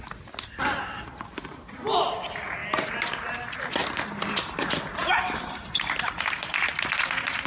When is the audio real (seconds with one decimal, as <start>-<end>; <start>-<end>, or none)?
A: 0.0-7.5